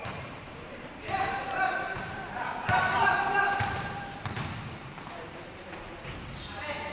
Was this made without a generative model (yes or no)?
no